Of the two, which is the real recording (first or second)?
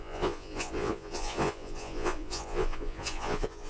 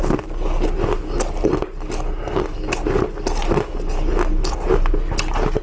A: second